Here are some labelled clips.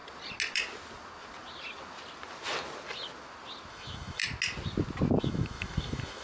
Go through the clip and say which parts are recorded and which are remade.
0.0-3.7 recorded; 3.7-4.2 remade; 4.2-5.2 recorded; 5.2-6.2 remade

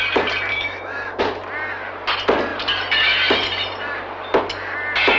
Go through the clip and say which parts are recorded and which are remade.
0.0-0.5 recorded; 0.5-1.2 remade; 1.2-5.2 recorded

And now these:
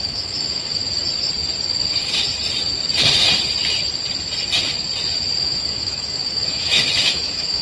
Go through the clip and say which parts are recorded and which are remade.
0.0-0.8 remade; 0.8-5.4 recorded; 5.4-7.6 remade

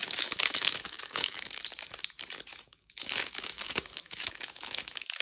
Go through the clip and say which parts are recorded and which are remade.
0.0-1.6 remade; 1.6-2.5 recorded; 2.5-5.2 remade

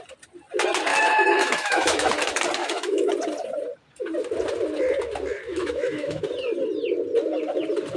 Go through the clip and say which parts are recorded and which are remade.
0.0-0.9 recorded; 0.9-2.1 remade; 2.1-2.6 recorded; 2.6-3.1 remade; 3.1-5.5 recorded; 5.5-6.2 remade; 6.2-8.0 recorded

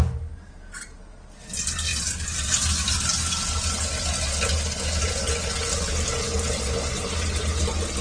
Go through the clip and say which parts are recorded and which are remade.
0.0-8.0 recorded